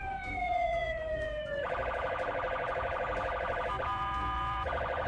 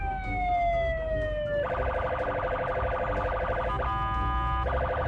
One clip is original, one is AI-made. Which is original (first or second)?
second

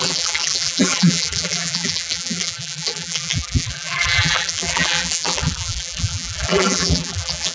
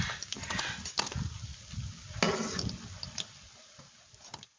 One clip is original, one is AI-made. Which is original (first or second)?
second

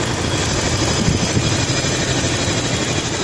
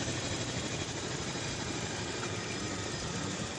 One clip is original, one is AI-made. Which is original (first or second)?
first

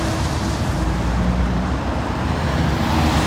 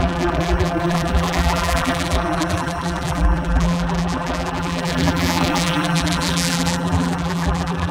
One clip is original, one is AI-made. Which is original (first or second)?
first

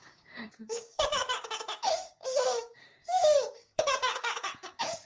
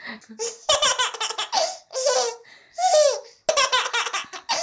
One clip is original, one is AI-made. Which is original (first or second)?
second